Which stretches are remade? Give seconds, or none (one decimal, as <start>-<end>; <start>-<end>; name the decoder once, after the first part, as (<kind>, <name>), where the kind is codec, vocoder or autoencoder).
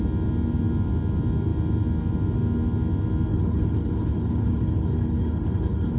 3.3-6.0 (codec, HILCodec)